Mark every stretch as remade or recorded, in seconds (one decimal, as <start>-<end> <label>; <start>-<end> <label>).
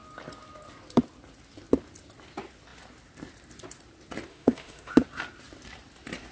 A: 0.0-4.3 recorded; 4.3-4.9 remade; 4.9-6.3 recorded